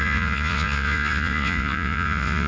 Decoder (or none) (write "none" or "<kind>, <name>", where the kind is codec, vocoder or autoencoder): vocoder, Vocos